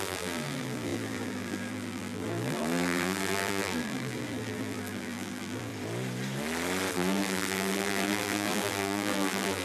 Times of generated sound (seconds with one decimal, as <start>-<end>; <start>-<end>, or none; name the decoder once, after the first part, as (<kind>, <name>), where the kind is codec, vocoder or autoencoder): 0.0-5.7 (vocoder, BigVGAN v2); 6.9-9.6

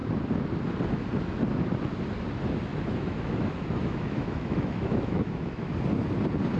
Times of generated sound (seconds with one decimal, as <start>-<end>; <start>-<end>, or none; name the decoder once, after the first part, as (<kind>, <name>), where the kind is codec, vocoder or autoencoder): 2.7-5.7 (autoencoder, DAC-VAE)

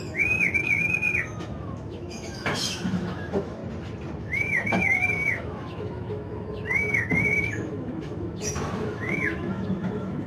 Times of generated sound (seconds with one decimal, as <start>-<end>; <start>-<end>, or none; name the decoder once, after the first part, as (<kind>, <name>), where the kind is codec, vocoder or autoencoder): 0.0-3.6 (autoencoder, DAC-VAE); 4.2-10.3

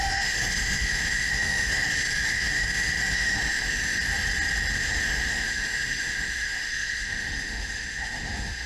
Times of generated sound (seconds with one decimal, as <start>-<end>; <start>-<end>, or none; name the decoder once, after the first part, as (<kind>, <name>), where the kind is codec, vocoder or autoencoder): 0.0-4.0 (autoencoder, DAC-VAE); 4.7-8.7

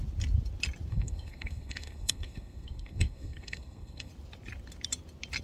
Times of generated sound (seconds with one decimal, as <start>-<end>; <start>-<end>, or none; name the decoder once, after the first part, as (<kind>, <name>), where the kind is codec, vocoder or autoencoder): 0.9-4.1 (codec, SNAC)